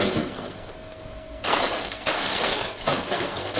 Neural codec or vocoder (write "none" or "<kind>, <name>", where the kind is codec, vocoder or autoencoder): codec, SNAC